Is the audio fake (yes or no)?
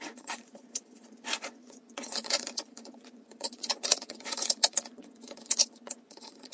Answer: yes